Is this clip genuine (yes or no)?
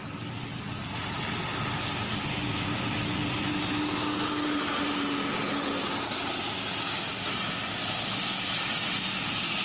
yes